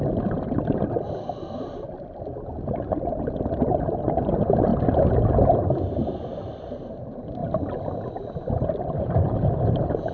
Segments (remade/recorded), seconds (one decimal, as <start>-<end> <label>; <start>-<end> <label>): 0.0-4.7 remade; 4.7-5.4 recorded; 5.4-7.4 remade; 7.4-8.7 recorded; 8.7-10.1 remade